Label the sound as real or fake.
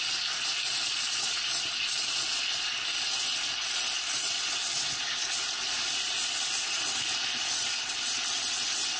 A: real